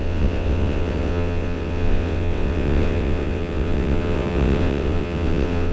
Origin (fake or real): fake